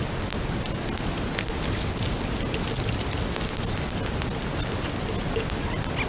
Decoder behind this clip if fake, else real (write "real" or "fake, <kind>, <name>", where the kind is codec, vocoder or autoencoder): real